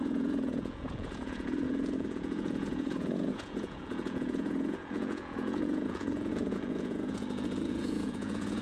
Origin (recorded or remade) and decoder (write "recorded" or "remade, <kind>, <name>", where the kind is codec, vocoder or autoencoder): remade, vocoder, Vocos